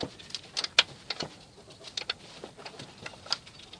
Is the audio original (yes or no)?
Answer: yes